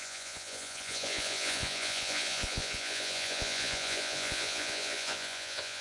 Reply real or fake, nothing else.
fake